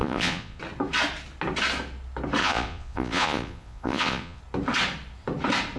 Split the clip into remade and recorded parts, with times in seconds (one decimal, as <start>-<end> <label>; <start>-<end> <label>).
0.0-0.6 remade; 0.6-2.4 recorded; 2.4-4.4 remade; 4.4-5.8 recorded